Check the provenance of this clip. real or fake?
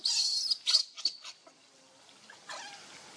real